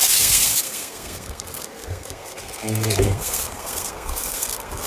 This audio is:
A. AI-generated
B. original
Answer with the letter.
A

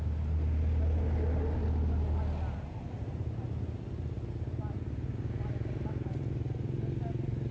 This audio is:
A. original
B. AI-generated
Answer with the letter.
A